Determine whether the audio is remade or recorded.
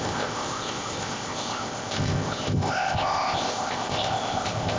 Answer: remade